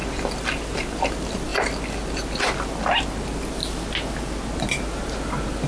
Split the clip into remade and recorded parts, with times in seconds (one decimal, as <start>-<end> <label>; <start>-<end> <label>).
0.0-5.7 recorded